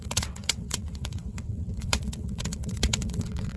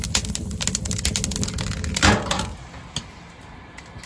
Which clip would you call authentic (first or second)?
second